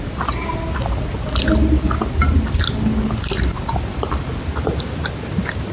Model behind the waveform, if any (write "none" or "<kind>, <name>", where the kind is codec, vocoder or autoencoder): none